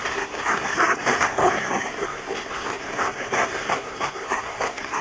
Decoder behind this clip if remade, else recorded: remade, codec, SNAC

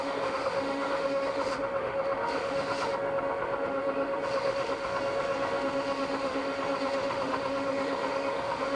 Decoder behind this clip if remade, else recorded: remade, autoencoder, DAC-VAE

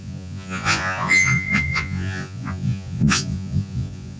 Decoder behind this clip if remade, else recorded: remade, vocoder, Vocos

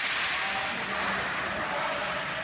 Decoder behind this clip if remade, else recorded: recorded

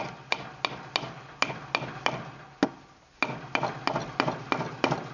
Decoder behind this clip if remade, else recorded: recorded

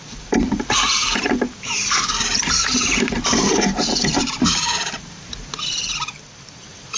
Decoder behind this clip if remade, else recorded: remade, vocoder, BigVGAN v2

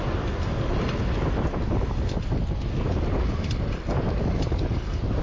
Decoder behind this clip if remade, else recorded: recorded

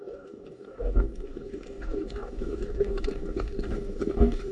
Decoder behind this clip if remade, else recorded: remade, codec, DAC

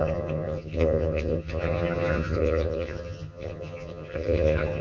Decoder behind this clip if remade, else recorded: remade, vocoder, HiFi-GAN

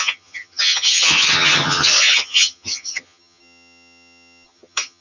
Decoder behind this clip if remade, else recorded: remade, vocoder, HiFi-GAN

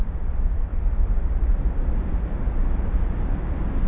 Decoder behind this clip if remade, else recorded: remade, vocoder, BigVGAN v2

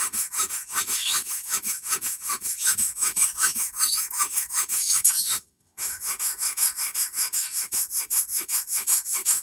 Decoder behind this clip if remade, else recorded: remade, autoencoder, DAC-VAE